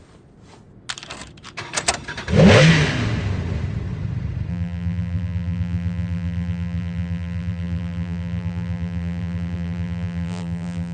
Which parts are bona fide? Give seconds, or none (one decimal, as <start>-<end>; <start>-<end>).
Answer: 0.0-4.5